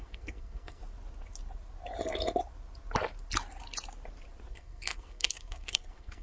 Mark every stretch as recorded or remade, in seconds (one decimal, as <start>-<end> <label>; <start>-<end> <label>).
0.0-0.8 remade; 0.8-4.5 recorded; 4.5-6.2 remade